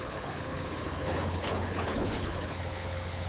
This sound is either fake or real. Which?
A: fake